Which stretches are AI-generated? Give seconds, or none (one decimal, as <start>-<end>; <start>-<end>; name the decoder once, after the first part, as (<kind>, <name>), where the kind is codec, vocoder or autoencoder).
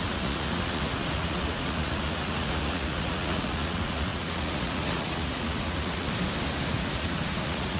0.0-6.1 (vocoder, Vocos); 6.7-7.8